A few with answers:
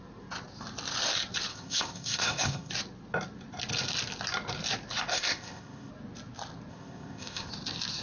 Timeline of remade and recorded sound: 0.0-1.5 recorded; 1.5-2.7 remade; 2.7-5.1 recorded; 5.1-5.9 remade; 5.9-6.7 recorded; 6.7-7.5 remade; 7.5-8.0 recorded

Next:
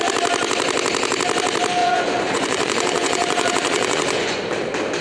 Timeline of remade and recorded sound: 0.0-1.8 recorded; 1.8-4.4 remade; 4.4-5.0 recorded